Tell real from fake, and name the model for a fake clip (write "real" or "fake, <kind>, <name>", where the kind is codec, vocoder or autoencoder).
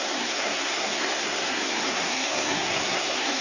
fake, codec, SNAC